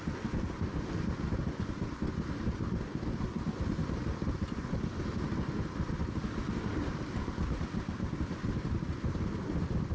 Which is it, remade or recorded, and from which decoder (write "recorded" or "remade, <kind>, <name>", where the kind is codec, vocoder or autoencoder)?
recorded